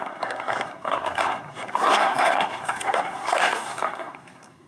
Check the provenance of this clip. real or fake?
fake